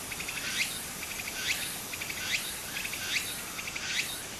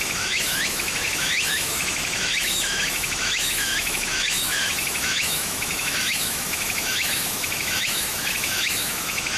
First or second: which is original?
first